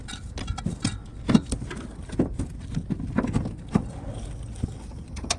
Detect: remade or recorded recorded